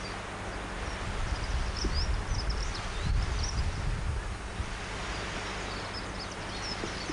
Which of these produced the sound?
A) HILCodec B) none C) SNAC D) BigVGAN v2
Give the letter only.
B